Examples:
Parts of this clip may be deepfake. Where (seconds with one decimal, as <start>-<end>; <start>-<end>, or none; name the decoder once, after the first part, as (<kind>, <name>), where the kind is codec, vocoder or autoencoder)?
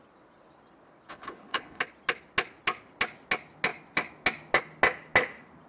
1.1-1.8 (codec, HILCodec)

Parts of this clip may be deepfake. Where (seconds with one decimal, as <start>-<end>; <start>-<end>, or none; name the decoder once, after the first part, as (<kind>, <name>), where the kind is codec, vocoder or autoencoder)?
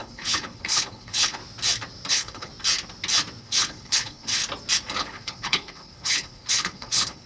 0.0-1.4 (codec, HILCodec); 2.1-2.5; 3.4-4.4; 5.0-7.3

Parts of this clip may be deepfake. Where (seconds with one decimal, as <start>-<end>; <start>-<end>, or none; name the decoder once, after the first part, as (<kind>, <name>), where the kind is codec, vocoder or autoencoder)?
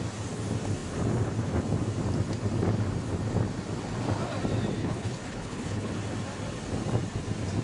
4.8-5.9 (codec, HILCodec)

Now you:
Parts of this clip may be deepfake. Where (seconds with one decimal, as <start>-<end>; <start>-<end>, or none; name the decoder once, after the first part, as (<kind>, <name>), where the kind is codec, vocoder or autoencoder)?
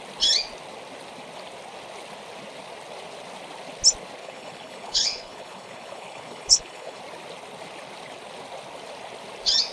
4.2-7.0 (codec, HILCodec)